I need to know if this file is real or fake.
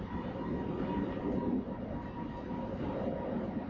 real